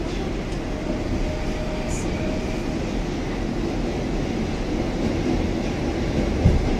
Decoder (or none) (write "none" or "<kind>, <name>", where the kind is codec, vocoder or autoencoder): none